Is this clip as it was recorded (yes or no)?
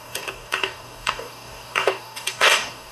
no